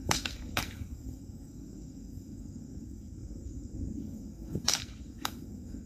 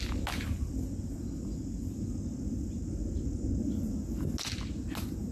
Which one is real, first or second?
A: second